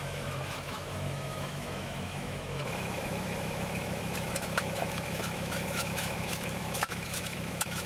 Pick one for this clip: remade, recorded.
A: remade